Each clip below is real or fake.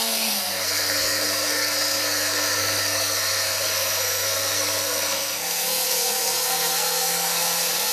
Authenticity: fake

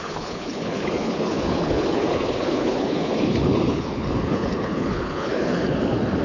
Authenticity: fake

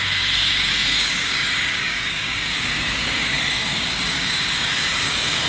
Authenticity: fake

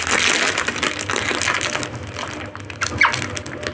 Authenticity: real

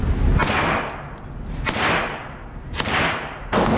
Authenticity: real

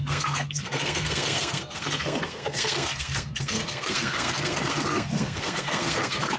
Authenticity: fake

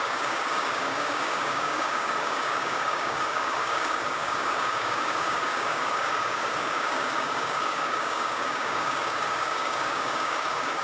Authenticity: fake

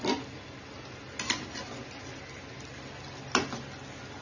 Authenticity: real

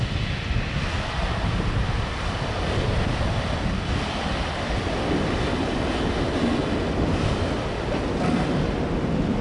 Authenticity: real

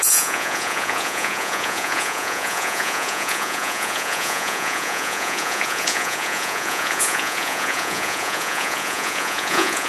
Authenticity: fake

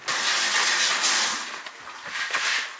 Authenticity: real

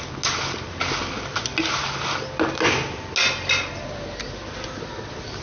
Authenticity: real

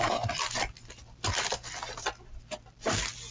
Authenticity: real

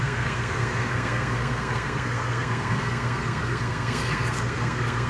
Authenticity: fake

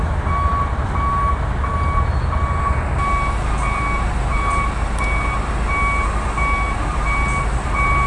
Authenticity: real